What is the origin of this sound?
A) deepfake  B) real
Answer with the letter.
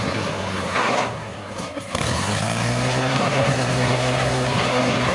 A